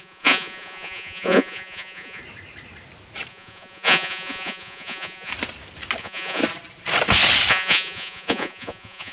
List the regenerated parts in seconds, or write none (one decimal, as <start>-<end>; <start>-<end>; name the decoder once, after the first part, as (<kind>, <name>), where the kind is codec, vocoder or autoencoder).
0.0-2.2 (vocoder, Vocos); 3.3-5.3; 6.0-6.4; 7.5-9.1